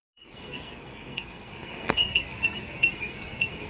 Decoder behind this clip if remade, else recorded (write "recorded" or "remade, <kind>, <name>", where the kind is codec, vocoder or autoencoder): remade, codec, SNAC